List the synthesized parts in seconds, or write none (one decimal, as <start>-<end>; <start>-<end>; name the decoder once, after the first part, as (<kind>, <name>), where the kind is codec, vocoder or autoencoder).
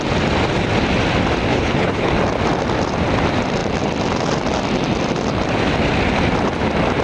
1.5-2.1 (codec, HILCodec)